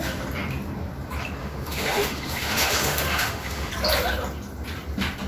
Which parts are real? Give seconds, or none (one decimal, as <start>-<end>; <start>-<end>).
0.0-1.4; 3.7-5.3